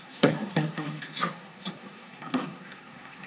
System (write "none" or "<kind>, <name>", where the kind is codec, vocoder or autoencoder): codec, SNAC